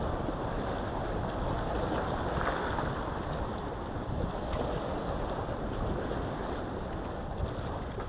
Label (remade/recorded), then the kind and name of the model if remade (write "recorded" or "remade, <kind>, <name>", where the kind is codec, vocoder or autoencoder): recorded